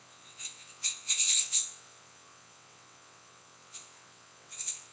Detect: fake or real fake